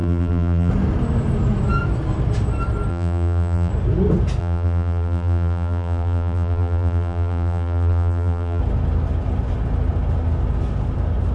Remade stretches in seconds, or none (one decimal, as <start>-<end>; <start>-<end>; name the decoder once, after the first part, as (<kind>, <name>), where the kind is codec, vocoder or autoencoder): 0.0-0.7 (vocoder, BigVGAN v2); 2.9-3.7; 4.4-8.6